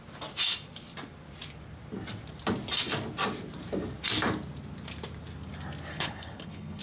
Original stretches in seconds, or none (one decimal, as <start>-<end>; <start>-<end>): 0.0-5.9